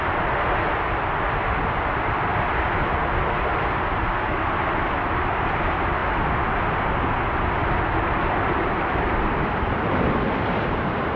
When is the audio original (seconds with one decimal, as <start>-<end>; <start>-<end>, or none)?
2.3-4.7; 6.0-8.3